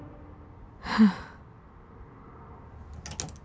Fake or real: real